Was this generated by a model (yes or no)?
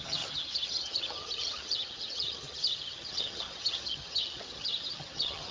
yes